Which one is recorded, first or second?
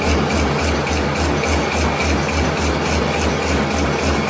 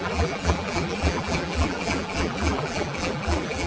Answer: first